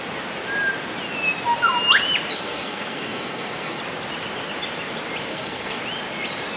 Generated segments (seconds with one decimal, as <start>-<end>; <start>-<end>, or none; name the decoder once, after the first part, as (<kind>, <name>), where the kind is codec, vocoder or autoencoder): 2.3-3.8 (codec, SNAC); 5.3-5.8